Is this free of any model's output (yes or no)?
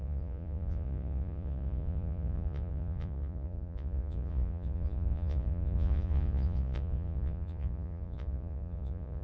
no